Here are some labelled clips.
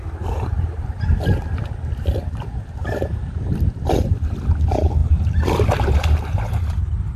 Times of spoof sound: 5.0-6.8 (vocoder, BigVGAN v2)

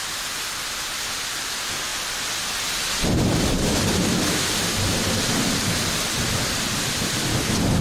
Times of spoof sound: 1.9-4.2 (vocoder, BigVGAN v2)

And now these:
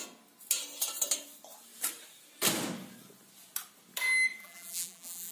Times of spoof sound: 4.4-5.3 (vocoder, BigVGAN v2)

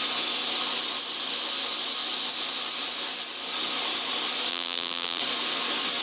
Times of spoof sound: 4.5-5.2 (vocoder, BigVGAN v2)

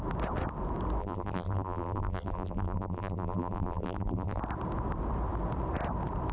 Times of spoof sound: 1.0-4.4 (vocoder, BigVGAN v2)

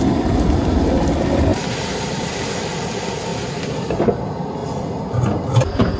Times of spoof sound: 1.5-2.3 (vocoder, BigVGAN v2); 3.3-4.1

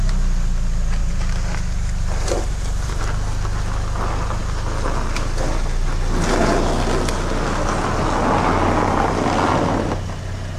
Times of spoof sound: 1.0-3.0 (vocoder, BigVGAN v2)

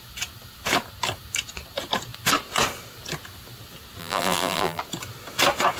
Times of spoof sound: 4.0-4.8 (vocoder, BigVGAN v2)